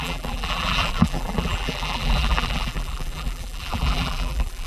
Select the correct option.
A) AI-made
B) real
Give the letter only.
A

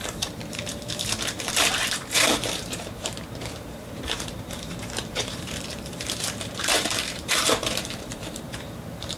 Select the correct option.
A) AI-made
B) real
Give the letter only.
A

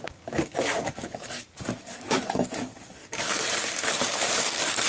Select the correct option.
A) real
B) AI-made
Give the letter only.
B